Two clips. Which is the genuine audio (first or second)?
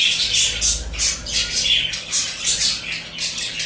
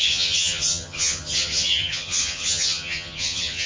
first